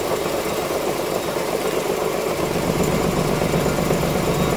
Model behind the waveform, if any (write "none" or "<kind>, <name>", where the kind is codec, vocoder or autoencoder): none